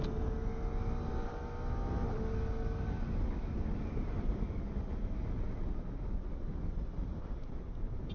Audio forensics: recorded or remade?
recorded